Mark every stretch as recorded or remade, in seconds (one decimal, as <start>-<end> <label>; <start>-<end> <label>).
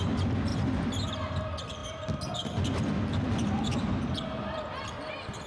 0.0-0.5 recorded; 0.5-1.1 remade; 1.1-1.8 recorded; 1.8-5.1 remade; 5.1-5.5 recorded